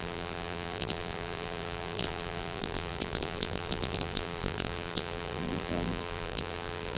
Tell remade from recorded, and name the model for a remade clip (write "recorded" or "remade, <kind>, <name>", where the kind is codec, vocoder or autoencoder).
remade, vocoder, BigVGAN v2